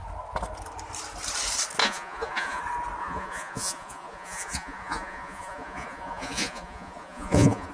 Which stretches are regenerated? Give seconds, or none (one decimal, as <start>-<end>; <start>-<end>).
1.8-2.6; 3.0-7.7